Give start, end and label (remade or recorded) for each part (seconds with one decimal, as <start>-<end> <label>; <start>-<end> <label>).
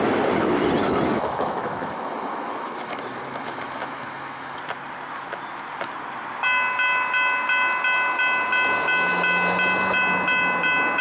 0.0-0.8 recorded; 0.8-4.6 remade; 4.6-11.0 recorded